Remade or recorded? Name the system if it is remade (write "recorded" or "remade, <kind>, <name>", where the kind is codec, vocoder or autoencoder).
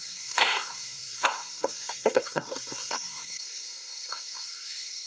remade, codec, SNAC